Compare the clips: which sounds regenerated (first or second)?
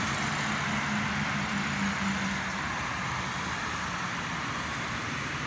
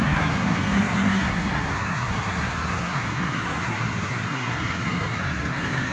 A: second